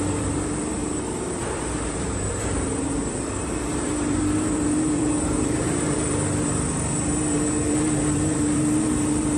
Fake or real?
fake